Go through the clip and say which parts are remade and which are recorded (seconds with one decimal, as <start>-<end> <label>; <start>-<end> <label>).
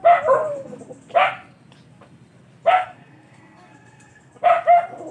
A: 0.0-2.7 recorded; 2.7-4.3 remade; 4.3-5.1 recorded